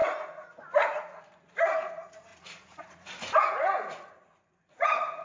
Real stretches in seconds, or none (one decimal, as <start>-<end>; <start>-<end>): none